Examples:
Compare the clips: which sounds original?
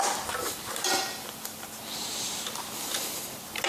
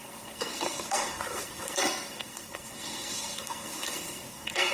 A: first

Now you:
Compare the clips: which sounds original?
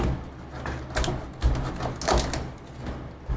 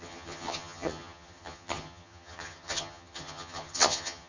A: first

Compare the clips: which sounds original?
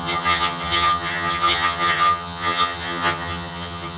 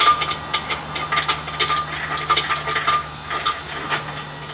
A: second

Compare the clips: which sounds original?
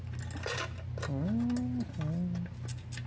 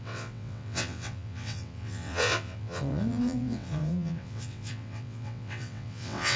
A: first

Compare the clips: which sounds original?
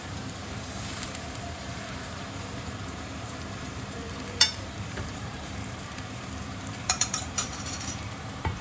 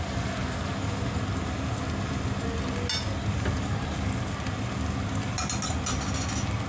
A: second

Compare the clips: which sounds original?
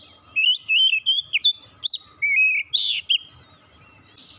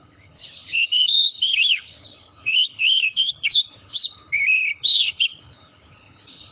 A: first